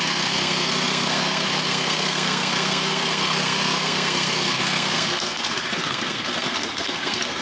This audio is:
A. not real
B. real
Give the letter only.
A